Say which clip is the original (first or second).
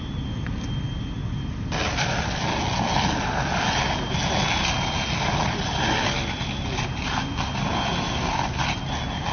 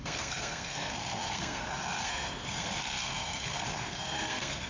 first